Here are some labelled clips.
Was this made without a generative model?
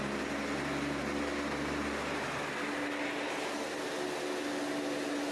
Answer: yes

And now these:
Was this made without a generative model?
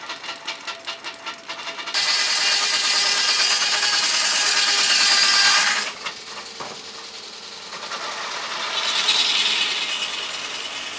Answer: yes